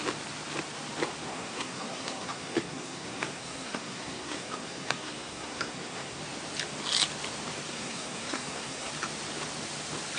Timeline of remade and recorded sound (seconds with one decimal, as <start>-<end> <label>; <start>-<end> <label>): 0.0-1.3 recorded; 1.3-6.2 remade; 6.2-7.7 recorded; 7.7-8.9 remade; 8.9-10.2 recorded